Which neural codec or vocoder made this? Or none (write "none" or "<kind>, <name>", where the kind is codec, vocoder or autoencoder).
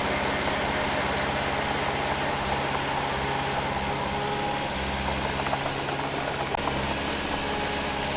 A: none